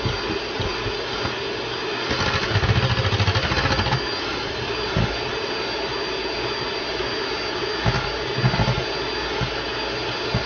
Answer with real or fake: real